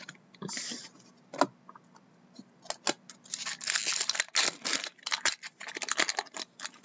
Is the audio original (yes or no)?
yes